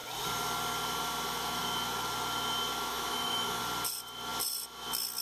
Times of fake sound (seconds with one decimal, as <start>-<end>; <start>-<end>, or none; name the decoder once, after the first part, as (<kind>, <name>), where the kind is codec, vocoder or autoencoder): 2.9-3.6 (autoencoder, DAC-VAE)